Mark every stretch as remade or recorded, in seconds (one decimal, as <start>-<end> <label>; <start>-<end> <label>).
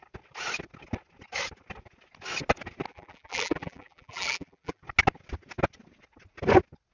0.0-2.9 recorded; 2.9-4.8 remade; 4.8-6.9 recorded